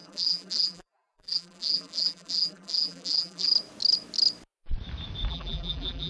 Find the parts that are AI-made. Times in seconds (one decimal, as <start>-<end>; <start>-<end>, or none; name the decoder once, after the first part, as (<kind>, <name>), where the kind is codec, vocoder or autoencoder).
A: 0.0-3.5 (vocoder, BigVGAN v2); 5.3-6.1